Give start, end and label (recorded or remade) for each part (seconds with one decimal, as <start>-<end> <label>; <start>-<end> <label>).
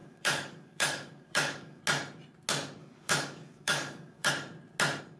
0.0-1.8 remade; 1.8-2.8 recorded; 2.8-4.3 remade; 4.3-5.2 recorded